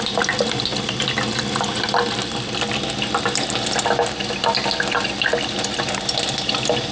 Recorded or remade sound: recorded